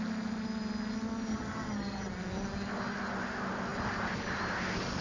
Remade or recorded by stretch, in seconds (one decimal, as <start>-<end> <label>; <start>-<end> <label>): 0.0-1.3 recorded; 1.3-2.1 remade; 2.1-5.0 recorded